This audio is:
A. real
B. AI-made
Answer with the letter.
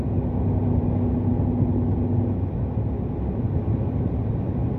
A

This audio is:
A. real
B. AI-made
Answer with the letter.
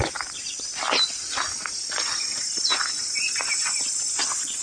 A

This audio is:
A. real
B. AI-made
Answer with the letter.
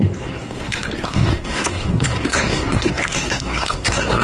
B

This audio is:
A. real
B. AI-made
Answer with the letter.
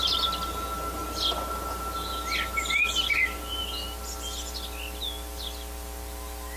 A